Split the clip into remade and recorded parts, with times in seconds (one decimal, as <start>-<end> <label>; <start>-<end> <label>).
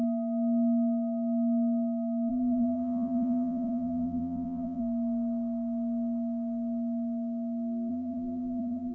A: 0.0-2.3 recorded; 2.3-4.8 remade; 4.8-7.9 recorded; 7.9-8.9 remade